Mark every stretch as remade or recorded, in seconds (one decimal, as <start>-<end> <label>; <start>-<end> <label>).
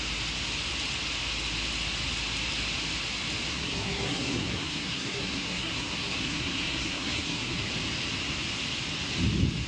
0.0-3.5 recorded; 3.5-7.7 remade; 7.7-9.7 recorded